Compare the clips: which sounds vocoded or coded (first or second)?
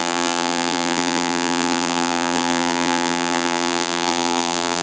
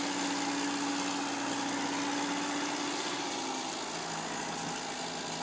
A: first